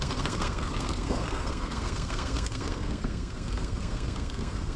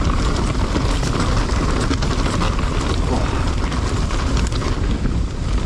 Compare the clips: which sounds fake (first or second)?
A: first